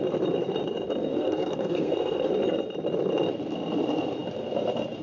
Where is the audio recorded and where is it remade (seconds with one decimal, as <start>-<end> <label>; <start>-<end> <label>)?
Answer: 0.0-1.1 recorded; 1.1-2.3 remade; 2.3-5.0 recorded